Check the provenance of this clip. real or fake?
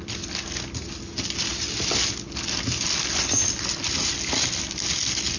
real